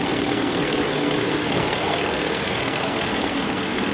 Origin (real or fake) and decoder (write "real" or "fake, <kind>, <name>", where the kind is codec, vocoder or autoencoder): fake, codec, SNAC